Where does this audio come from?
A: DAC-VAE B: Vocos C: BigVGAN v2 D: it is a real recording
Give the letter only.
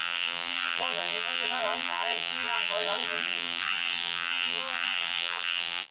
C